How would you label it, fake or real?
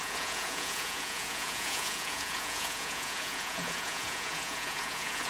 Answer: fake